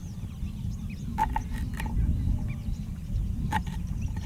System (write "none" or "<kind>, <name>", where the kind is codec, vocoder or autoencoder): none